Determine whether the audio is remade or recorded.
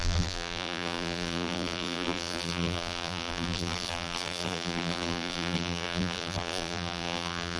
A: remade